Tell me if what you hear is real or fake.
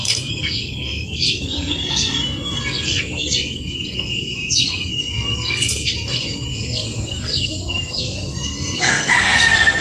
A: fake